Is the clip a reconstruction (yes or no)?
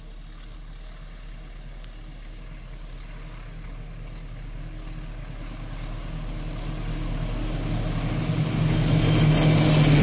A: no